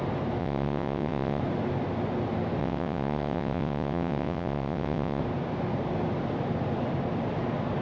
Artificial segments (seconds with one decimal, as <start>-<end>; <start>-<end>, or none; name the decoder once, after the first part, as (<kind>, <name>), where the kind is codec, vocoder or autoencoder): 0.4-1.4 (vocoder, WaveNeXt); 2.6-5.2